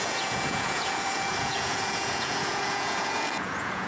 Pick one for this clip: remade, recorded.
remade